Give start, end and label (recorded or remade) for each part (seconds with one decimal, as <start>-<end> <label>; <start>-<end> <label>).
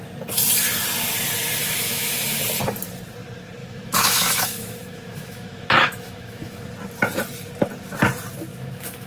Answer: 0.0-1.6 recorded; 1.6-2.4 remade; 2.4-3.6 recorded; 3.6-6.7 remade; 6.7-8.5 recorded; 8.5-9.1 remade